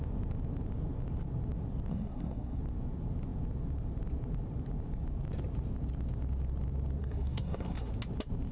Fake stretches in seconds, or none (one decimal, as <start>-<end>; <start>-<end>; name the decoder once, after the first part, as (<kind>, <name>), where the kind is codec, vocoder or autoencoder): 1.9-2.6 (codec, SNAC); 7.0-7.9